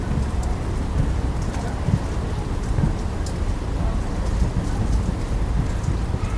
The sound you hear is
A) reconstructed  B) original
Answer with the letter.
B